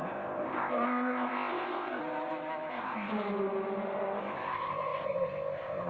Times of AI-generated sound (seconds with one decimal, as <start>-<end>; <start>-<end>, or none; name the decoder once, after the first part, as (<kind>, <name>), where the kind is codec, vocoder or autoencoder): 0.0-2.0 (codec, ZipCodec); 2.7-3.1; 4.2-5.9